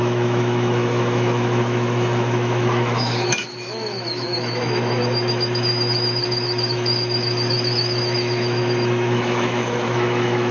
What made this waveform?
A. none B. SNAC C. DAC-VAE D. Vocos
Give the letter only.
C